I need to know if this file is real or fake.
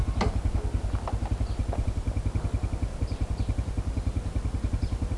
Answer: real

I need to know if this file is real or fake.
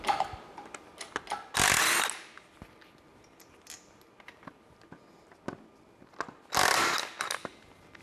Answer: real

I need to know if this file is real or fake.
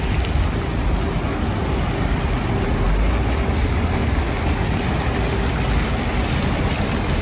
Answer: real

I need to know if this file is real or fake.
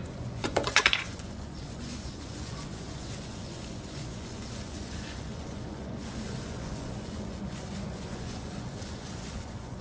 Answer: fake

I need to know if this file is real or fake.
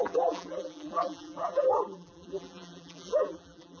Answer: fake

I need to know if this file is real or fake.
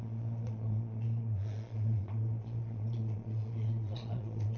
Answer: fake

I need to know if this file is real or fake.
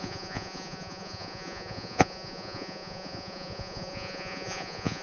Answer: fake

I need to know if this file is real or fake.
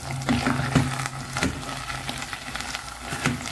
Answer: real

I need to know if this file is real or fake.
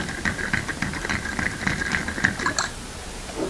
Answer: real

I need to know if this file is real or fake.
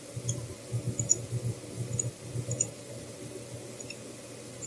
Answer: real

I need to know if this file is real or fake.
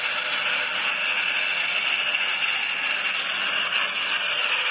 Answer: real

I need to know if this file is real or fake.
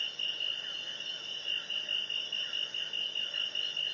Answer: real